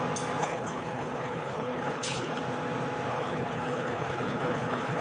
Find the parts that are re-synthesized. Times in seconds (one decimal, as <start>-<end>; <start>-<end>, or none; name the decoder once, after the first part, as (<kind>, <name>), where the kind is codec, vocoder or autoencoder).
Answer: 0.4-2.4 (codec, HILCodec); 3.1-5.0